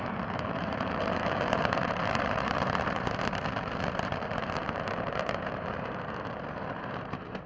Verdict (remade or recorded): remade